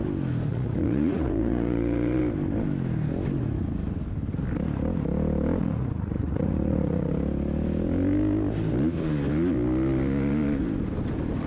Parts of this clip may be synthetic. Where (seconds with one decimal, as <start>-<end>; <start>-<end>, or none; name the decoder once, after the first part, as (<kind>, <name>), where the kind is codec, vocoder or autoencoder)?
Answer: 0.5-2.2 (vocoder, Vocos); 5.6-7.1